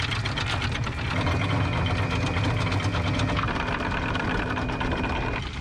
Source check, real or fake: real